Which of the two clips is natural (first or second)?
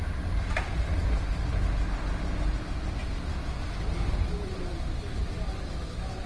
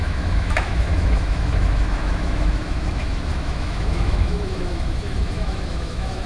first